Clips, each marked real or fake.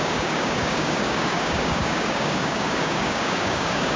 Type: fake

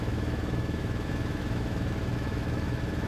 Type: fake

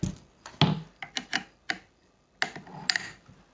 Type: real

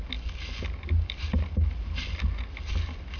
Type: real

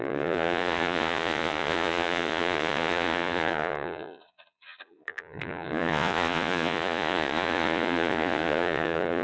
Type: fake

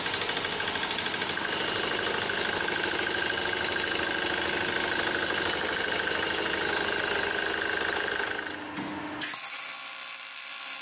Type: real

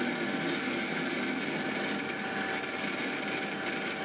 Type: real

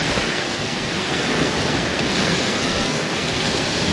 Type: fake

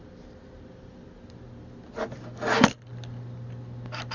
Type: real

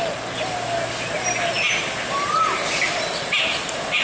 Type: real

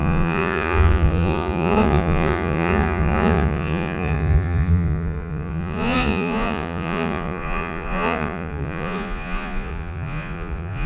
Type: fake